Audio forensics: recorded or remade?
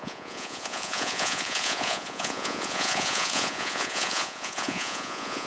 remade